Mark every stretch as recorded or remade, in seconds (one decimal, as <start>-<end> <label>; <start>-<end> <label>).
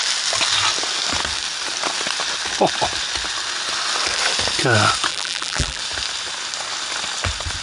0.0-5.1 recorded; 5.1-5.8 remade; 5.8-7.6 recorded